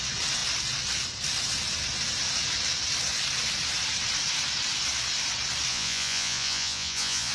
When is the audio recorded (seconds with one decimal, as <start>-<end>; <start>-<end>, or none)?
0.0-5.7